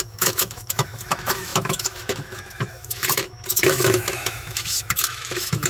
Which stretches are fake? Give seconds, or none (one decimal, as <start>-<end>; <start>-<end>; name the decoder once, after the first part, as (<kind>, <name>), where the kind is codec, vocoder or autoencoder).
0.0-5.7 (autoencoder, DAC-VAE)

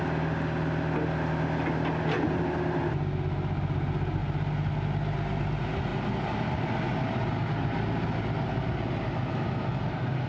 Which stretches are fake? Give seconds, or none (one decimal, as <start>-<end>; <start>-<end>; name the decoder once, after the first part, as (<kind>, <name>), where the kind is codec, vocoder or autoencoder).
none

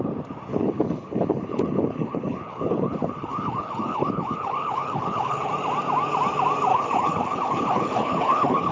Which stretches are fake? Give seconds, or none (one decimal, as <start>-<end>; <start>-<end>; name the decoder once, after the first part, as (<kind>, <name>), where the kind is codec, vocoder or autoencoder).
0.5-5.5 (codec, HILCodec); 6.7-8.7

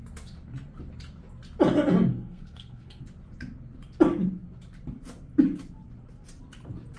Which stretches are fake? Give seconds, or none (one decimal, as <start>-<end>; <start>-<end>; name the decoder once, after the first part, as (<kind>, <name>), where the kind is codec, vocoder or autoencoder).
2.1-3.0 (codec, SNAC)

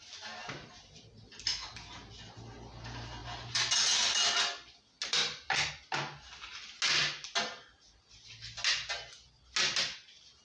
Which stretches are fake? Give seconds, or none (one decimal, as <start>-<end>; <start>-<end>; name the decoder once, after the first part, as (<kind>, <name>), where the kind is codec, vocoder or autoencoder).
none

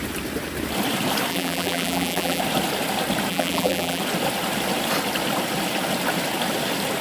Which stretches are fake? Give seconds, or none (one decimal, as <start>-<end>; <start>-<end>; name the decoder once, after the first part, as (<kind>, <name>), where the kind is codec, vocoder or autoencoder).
1.3-2.4 (vocoder, BigVGAN v2); 3.3-4.0

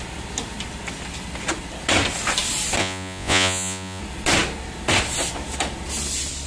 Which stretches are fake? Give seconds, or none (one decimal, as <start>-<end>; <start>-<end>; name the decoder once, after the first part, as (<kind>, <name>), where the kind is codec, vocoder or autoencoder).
2.8-4.0 (vocoder, Vocos)